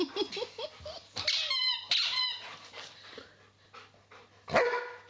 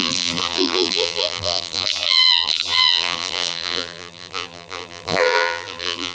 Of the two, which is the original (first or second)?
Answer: first